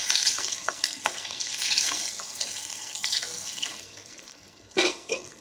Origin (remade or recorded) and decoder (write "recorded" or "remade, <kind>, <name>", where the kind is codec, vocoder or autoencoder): remade, codec, SNAC